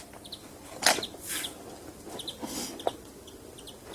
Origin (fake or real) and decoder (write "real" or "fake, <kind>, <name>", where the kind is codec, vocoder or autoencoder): real